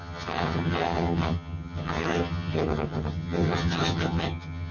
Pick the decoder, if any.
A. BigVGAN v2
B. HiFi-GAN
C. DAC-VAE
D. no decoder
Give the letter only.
B